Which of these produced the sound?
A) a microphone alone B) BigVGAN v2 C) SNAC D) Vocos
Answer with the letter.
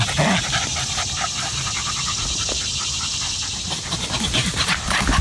A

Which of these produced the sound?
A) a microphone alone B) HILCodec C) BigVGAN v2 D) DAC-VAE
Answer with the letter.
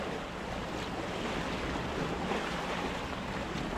A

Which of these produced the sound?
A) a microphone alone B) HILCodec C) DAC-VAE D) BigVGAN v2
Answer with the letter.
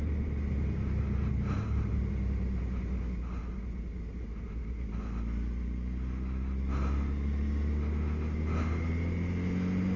A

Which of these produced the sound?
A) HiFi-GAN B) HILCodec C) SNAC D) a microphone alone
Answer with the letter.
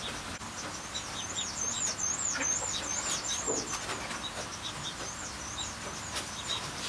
D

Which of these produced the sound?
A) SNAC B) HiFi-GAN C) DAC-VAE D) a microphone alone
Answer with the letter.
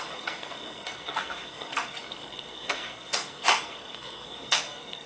A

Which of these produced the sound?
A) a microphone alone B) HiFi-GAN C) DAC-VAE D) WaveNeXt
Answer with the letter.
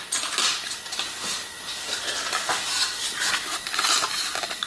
A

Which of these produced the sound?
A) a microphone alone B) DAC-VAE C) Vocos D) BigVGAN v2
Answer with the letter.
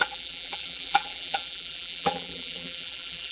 D